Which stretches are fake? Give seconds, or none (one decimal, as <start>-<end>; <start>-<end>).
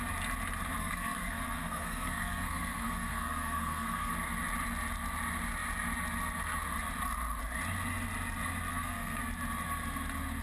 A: 0.8-4.1; 8.7-9.2